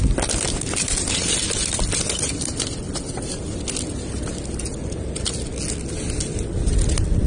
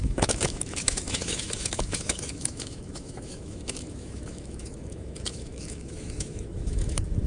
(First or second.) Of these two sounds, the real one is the first